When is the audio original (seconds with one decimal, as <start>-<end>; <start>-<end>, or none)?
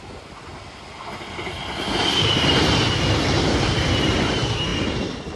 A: 0.0-4.7